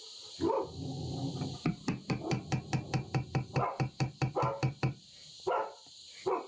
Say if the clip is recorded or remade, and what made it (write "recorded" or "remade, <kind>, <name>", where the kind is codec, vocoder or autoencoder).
recorded